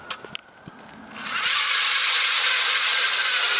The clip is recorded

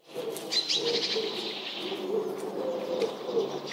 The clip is recorded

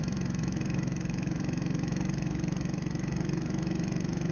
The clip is remade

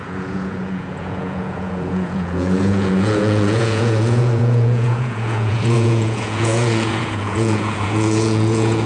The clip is remade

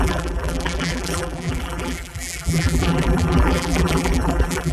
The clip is remade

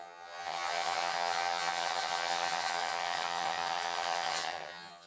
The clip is remade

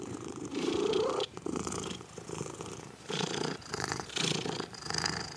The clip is remade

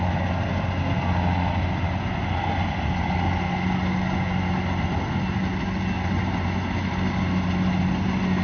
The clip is recorded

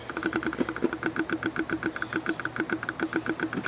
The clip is recorded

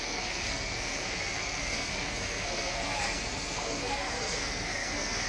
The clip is remade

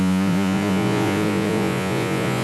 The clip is remade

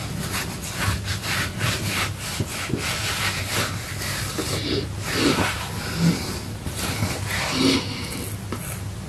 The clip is recorded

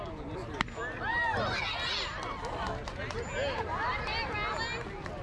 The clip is recorded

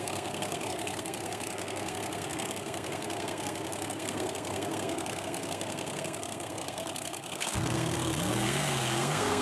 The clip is remade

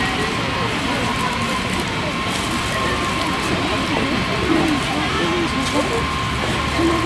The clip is recorded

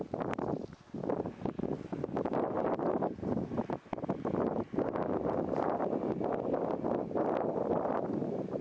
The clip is recorded